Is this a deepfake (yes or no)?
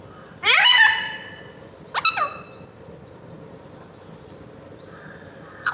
no